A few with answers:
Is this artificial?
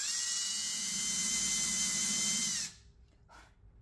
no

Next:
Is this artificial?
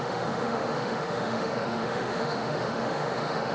yes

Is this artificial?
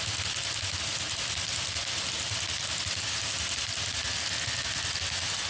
no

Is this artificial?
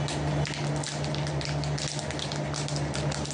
no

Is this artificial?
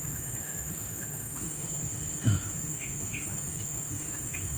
yes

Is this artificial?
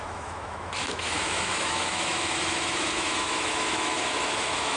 yes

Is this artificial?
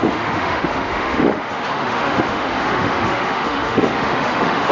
yes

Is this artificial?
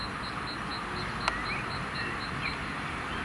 no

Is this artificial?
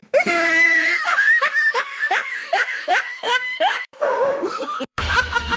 yes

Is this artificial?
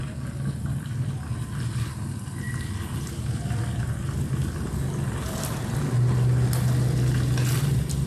no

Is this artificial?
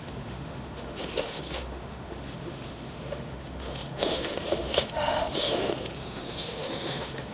yes